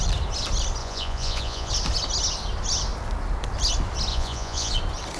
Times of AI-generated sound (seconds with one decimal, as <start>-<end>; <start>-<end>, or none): 0.8-1.7; 4.1-4.7